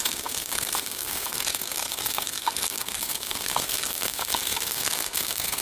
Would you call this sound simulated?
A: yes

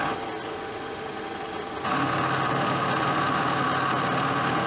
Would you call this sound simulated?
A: no